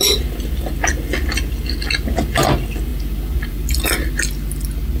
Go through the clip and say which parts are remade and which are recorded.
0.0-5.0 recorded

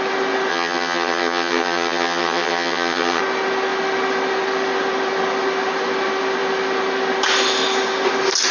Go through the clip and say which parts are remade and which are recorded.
0.0-0.5 recorded; 0.5-3.2 remade; 3.2-8.5 recorded

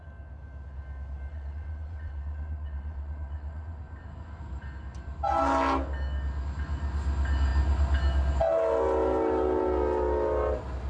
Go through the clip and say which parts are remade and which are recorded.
0.0-1.3 recorded; 1.3-3.8 remade; 3.8-10.9 recorded

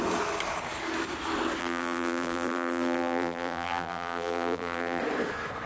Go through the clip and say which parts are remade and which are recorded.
0.0-1.6 recorded; 1.6-5.0 remade; 5.0-5.7 recorded

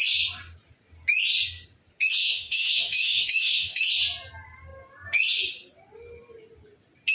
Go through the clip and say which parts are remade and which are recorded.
0.0-2.2 recorded; 2.2-3.8 remade; 3.8-7.1 recorded